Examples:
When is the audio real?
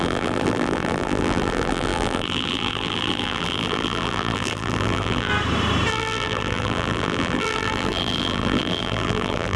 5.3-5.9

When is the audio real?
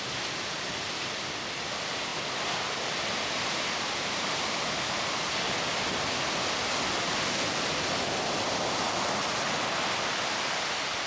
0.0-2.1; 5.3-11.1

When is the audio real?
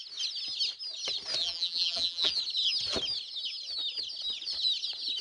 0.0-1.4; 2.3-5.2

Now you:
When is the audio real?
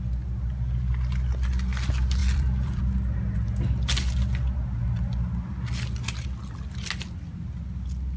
0.0-2.2; 2.8-8.2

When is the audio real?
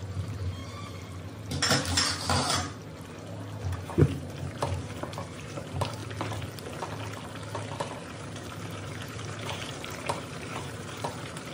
0.6-3.8; 6.0-7.8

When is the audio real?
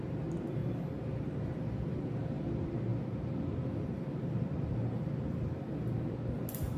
0.0-2.9; 6.2-6.8